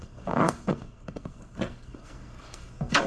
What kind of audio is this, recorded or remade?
remade